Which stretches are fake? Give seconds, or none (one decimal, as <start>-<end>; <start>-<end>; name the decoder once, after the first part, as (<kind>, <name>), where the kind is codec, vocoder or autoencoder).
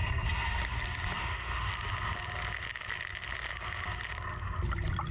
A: 1.2-1.7 (autoencoder, DAC-VAE)